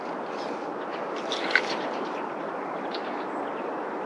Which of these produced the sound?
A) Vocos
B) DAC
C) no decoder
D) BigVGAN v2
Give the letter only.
C